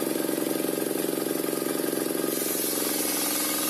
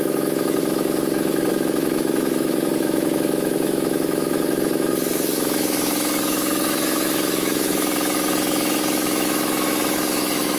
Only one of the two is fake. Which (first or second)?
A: second